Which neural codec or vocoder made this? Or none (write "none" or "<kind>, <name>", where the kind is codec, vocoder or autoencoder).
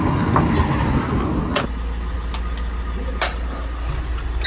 none